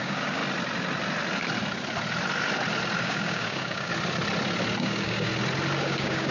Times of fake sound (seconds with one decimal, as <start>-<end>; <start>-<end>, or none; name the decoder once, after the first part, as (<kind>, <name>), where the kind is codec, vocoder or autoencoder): 0.0-0.4 (codec, DAC); 3.0-3.9; 4.8-5.3; 5.8-6.3